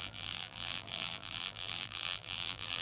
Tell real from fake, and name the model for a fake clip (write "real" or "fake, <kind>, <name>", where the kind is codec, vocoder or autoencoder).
fake, vocoder, BigVGAN v2